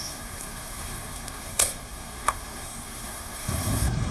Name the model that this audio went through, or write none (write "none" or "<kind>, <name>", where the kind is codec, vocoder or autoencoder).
codec, SNAC